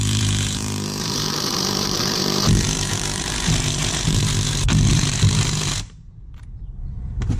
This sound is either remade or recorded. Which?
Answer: remade